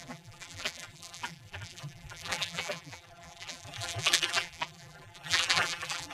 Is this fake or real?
fake